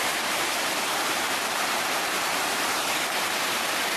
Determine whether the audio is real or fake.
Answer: fake